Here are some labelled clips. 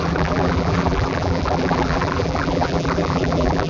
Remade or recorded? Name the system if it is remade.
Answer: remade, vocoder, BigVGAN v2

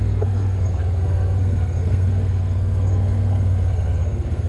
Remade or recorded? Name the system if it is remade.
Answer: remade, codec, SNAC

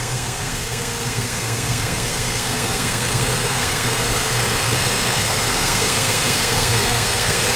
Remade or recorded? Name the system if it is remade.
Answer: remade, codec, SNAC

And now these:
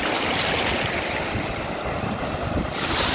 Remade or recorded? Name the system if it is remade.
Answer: recorded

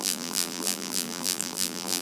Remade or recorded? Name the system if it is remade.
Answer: remade, vocoder, BigVGAN v2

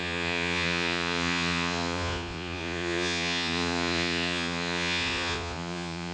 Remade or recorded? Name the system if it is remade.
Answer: remade, vocoder, Vocos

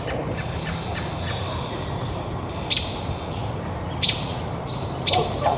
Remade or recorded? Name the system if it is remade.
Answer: remade, vocoder, BigVGAN v2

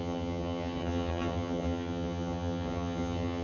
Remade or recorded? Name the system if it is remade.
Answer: remade, vocoder, HiFi-GAN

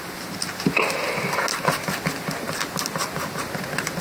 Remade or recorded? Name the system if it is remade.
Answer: recorded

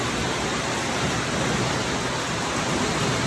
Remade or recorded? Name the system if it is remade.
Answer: recorded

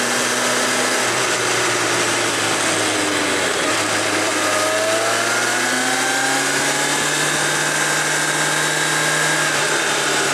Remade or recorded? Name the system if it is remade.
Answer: recorded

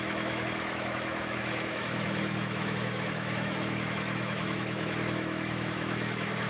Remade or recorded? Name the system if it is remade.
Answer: remade, autoencoder, DAC-VAE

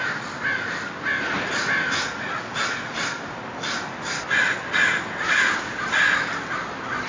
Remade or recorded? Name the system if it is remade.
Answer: recorded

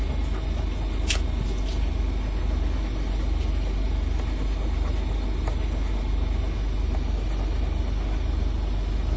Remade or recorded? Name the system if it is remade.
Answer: recorded